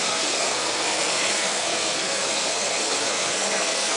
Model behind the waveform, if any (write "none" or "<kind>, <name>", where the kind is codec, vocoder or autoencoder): codec, SNAC